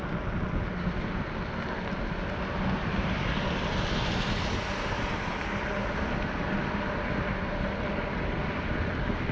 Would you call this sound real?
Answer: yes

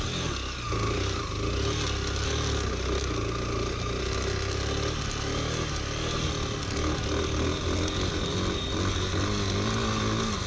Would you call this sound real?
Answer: yes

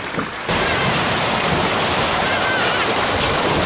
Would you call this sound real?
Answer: no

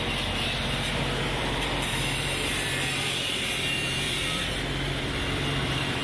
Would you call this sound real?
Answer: no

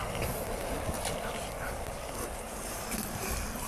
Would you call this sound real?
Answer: yes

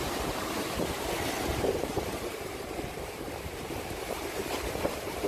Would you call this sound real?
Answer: no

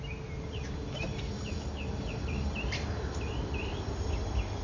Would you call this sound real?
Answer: yes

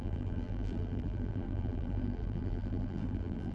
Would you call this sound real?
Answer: no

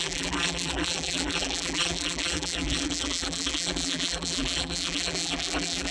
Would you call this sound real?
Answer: no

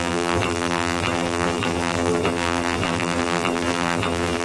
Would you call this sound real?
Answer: no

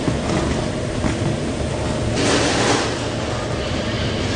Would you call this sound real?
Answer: yes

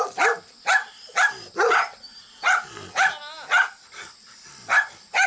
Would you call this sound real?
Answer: yes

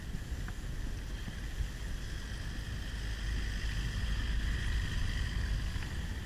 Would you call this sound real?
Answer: yes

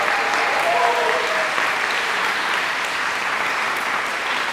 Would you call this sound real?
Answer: no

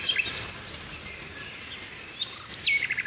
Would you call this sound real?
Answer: no